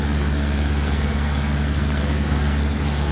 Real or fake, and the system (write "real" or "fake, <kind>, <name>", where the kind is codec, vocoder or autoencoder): fake, codec, SNAC